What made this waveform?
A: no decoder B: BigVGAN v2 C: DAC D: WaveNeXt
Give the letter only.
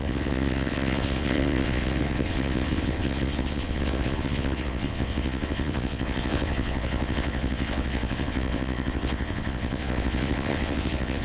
D